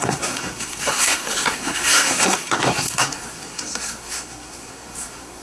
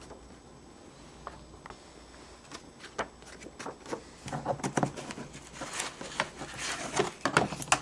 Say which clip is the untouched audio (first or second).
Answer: second